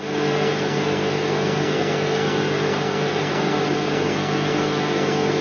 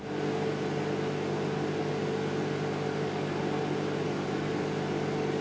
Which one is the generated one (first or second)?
first